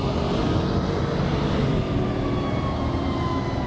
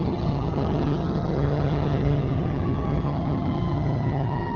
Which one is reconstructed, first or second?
second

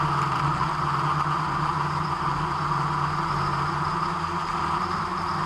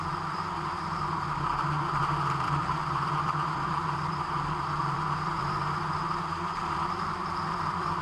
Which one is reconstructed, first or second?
second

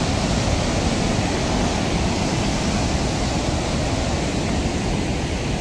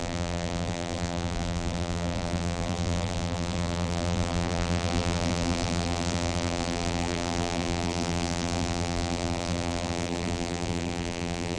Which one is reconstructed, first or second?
second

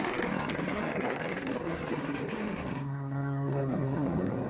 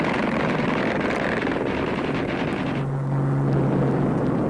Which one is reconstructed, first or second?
first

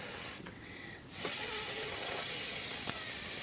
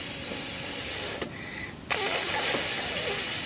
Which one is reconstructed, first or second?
first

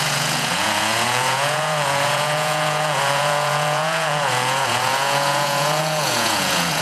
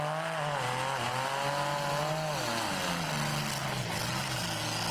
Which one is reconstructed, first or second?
first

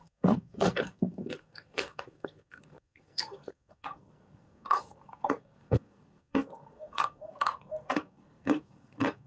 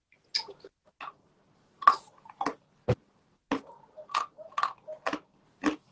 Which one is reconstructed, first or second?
first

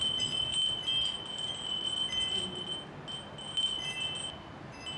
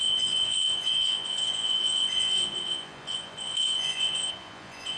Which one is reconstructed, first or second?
second